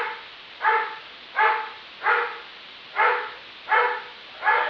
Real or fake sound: real